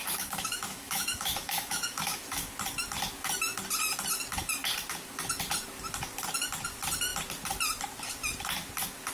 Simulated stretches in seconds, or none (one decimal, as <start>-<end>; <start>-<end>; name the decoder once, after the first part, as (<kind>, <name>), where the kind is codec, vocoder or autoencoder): 0.0-2.5 (autoencoder, DAC-VAE)